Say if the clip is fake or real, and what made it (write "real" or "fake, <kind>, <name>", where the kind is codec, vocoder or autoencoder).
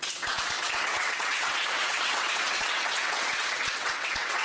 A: fake, vocoder, WaveNeXt